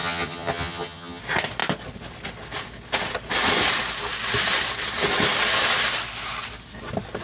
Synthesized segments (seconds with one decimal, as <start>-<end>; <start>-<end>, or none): 0.0-1.2

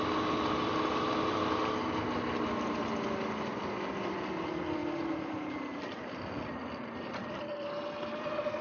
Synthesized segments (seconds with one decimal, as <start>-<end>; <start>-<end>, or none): none